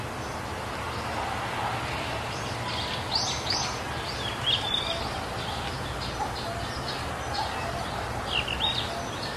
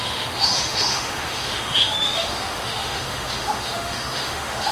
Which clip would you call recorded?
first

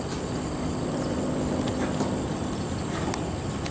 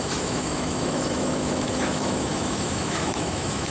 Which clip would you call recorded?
first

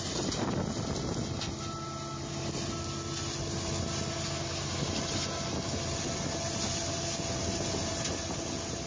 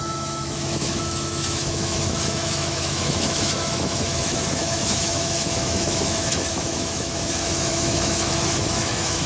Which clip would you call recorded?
first